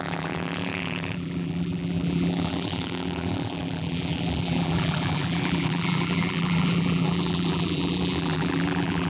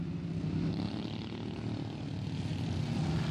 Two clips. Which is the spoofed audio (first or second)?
first